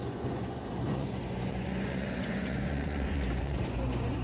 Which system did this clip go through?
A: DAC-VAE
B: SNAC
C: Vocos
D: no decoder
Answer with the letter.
C